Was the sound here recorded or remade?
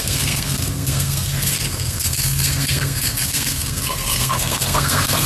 remade